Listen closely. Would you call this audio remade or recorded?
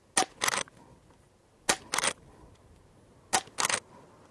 recorded